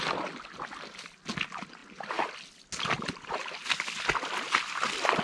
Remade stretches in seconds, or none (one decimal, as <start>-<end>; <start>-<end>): none